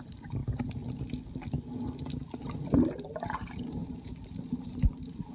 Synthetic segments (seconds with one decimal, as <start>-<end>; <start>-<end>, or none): 0.0-0.4; 3.6-5.3